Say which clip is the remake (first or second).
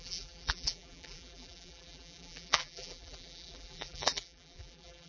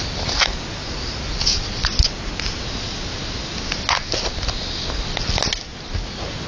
first